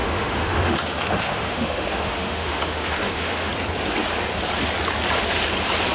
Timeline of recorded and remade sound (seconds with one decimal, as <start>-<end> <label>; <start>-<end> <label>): 0.0-3.5 remade; 3.5-5.9 recorded